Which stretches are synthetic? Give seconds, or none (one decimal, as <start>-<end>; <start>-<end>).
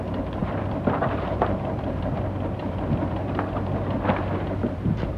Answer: 0.4-3.5; 4.6-5.2